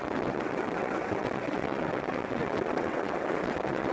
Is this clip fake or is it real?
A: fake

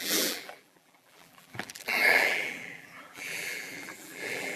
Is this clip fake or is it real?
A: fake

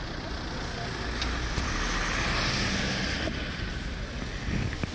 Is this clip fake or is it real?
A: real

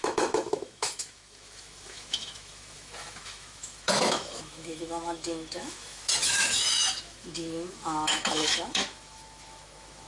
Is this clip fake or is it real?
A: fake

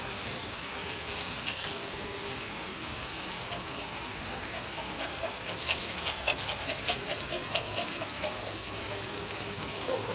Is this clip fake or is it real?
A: fake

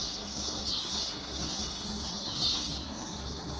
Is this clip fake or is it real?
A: fake